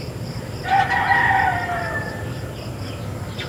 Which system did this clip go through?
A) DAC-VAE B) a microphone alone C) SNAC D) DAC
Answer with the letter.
B